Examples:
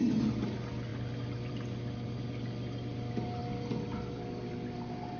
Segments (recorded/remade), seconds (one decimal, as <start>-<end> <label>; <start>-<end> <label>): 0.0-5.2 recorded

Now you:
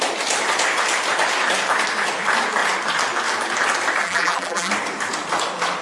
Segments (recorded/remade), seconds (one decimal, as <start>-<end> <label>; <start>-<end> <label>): 0.0-4.0 recorded; 4.0-4.7 remade; 4.7-5.8 recorded

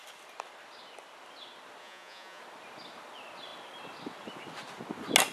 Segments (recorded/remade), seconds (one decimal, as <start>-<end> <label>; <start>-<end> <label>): 0.0-1.8 recorded; 1.8-2.4 remade; 2.4-5.3 recorded

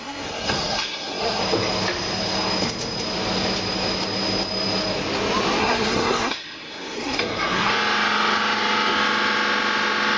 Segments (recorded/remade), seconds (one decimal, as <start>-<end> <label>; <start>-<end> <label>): 0.0-1.4 remade; 1.4-5.6 recorded; 5.6-7.7 remade; 7.7-10.2 recorded

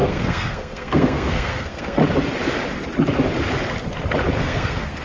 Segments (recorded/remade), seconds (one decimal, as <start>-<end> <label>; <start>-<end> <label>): 0.0-2.0 remade; 2.0-4.4 recorded; 4.4-5.0 remade

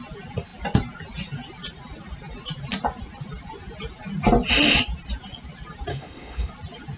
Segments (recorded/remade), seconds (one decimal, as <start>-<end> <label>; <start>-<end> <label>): 0.0-5.9 recorded; 5.9-6.5 remade; 6.5-7.0 recorded